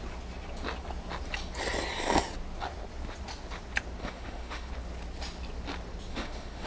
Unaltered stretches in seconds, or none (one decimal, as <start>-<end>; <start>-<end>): 0.0-4.0; 4.7-6.1